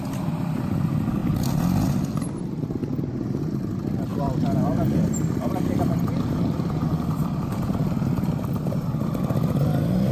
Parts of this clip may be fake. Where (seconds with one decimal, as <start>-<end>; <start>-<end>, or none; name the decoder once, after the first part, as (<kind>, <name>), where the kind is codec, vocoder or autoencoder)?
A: 0.0-1.2 (vocoder, BigVGAN v2); 2.2-2.8; 3.4-10.1